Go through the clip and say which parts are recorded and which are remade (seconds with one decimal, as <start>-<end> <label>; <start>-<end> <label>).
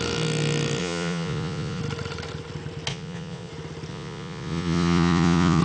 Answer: 0.0-0.8 recorded; 0.8-1.8 remade; 1.8-2.9 recorded; 2.9-3.5 remade; 3.5-3.9 recorded; 3.9-5.6 remade